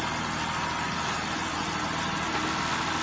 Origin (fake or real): real